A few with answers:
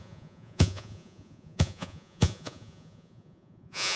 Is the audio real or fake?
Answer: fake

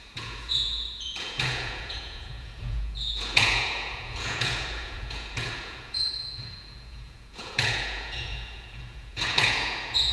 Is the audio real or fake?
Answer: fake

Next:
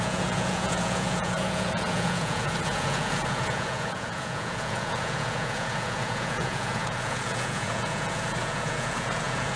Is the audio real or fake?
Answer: fake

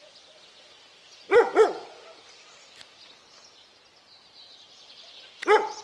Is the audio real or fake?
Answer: real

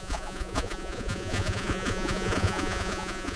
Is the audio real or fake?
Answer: fake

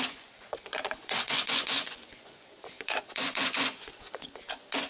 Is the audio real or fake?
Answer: fake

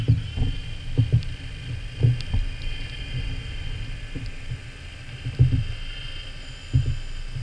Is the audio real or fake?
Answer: real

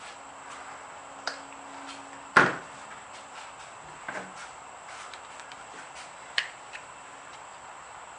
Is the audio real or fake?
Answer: real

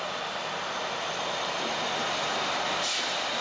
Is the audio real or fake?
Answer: real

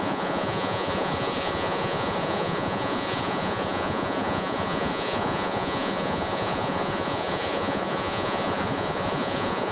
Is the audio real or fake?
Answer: fake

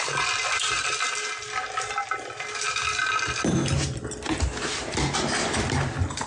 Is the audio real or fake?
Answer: real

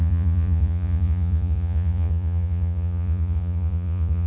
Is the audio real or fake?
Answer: fake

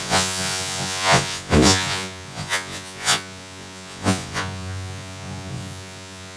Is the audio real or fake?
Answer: fake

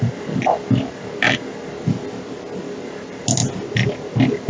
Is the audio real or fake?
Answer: real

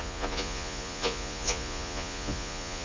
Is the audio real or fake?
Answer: fake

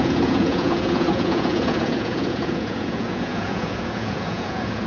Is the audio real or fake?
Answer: fake